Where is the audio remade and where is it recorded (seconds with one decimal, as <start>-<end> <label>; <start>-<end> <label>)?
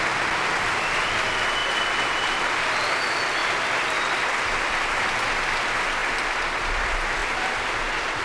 0.0-1.6 recorded; 1.6-2.4 remade; 2.4-3.4 recorded; 3.4-5.1 remade; 5.1-7.2 recorded; 7.2-8.2 remade